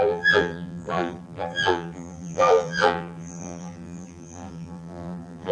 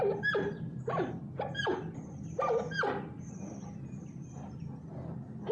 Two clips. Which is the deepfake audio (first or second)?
first